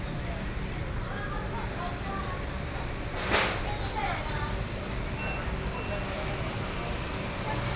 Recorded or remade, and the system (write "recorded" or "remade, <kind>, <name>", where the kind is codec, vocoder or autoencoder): recorded